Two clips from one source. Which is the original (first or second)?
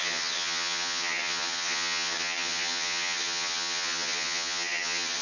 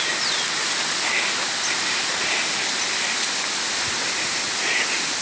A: second